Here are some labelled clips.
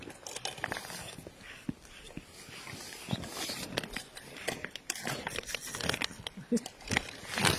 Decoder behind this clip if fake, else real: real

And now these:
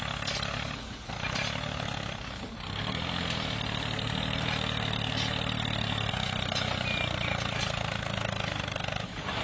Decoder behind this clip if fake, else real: real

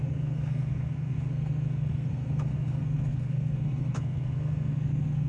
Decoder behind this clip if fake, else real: fake, codec, SNAC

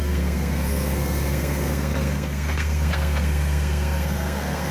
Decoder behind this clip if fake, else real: fake, codec, SNAC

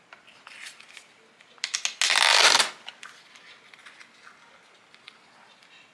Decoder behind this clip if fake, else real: real